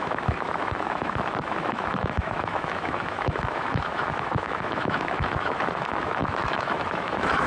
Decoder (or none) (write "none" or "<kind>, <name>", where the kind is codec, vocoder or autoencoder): autoencoder, DAC-VAE